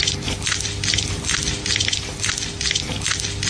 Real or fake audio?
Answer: real